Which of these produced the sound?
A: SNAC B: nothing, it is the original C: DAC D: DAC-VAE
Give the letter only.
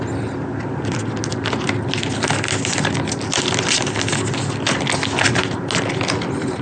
B